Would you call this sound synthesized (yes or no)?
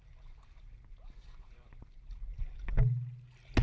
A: no